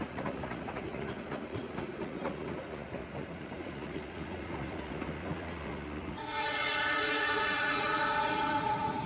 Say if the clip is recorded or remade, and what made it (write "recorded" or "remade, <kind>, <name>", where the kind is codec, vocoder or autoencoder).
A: remade, vocoder, Vocos